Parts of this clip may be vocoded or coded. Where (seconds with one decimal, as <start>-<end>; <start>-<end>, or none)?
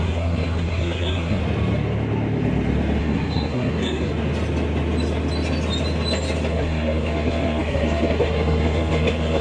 0.0-1.4; 3.0-4.1; 6.5-9.4